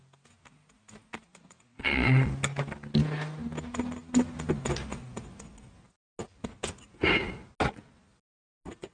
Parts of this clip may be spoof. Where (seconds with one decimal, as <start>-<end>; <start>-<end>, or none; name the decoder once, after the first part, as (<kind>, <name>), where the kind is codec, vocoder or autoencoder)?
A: 1.3-2.3 (vocoder, Vocos)